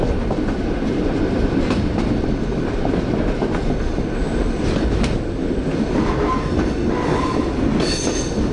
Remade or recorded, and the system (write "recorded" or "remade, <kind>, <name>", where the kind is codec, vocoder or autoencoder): recorded